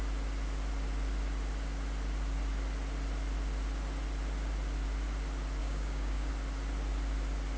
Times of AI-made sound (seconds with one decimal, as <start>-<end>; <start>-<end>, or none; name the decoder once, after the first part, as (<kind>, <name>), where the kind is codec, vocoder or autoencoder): 5.6-6.3 (codec, DAC)